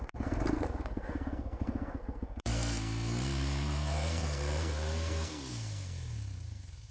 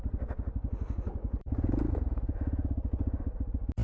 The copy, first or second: first